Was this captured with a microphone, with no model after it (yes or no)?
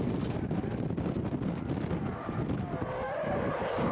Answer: yes